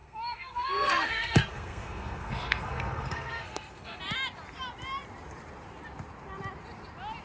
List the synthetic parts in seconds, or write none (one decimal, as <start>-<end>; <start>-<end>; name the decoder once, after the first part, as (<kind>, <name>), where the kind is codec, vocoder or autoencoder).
0.0-4.0 (codec, SNAC)